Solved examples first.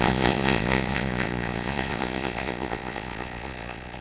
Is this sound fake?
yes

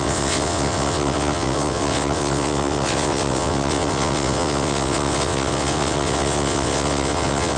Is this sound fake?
yes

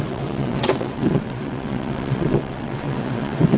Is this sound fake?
yes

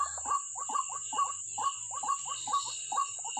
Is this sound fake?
no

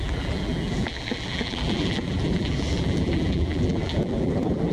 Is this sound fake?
yes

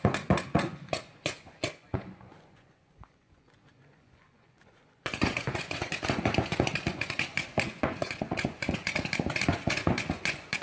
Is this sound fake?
yes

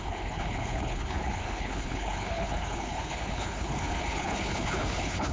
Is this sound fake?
yes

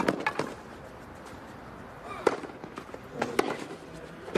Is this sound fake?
no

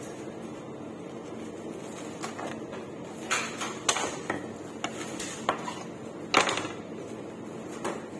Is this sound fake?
no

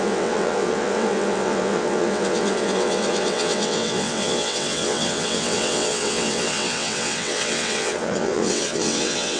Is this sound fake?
yes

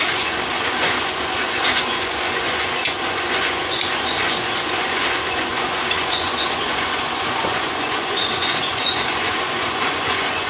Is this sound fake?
yes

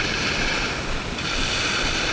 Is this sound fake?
no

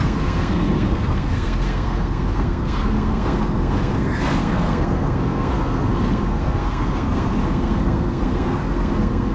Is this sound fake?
yes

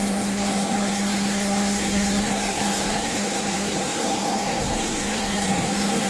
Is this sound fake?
yes